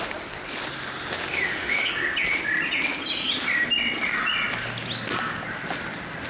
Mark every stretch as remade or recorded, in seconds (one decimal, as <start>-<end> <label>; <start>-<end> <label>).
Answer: 0.0-1.3 recorded; 1.3-1.9 remade; 1.9-6.3 recorded